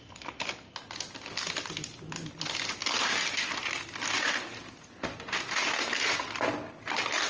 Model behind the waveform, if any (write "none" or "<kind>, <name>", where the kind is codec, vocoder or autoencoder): none